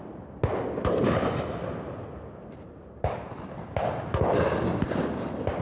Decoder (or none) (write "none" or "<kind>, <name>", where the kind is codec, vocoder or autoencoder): none